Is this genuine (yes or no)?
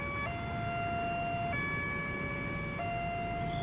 yes